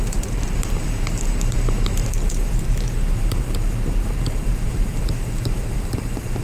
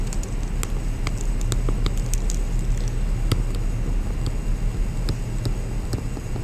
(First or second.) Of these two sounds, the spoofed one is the first